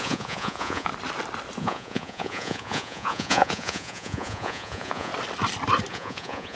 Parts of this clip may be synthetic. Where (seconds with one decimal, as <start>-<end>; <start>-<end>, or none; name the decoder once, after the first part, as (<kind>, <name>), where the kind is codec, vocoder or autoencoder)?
0.0-0.9 (vocoder, Vocos); 1.6-5.1; 5.9-6.6